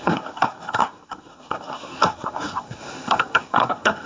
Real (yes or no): no